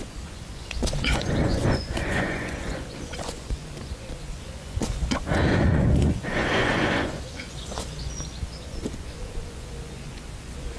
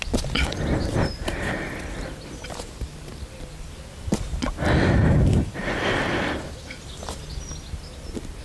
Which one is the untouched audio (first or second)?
second